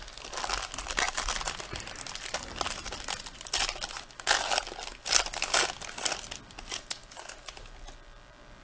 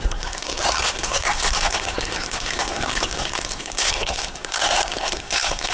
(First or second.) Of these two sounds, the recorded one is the first